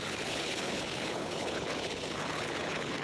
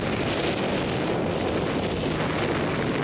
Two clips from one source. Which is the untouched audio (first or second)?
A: second